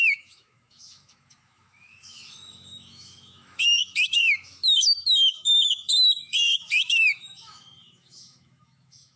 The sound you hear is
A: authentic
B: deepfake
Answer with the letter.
B